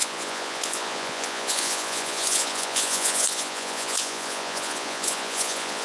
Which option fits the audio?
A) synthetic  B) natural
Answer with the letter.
A